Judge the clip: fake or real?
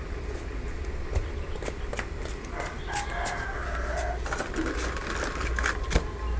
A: real